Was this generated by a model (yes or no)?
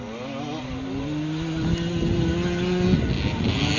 no